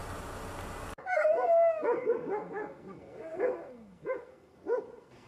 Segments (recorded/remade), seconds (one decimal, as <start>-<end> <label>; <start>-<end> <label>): 0.0-1.0 recorded; 1.0-5.3 remade